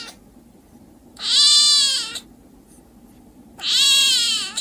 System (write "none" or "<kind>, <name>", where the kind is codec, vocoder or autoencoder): none